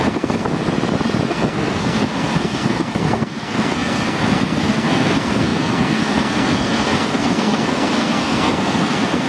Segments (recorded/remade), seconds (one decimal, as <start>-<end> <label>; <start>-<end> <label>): 0.0-0.6 remade; 0.6-1.3 recorded; 1.3-9.3 remade